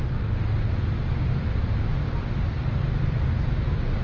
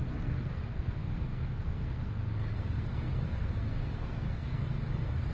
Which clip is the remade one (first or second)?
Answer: second